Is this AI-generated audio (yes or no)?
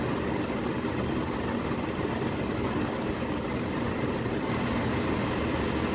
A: no